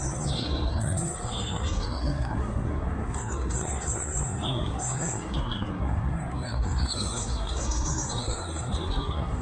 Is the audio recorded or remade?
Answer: remade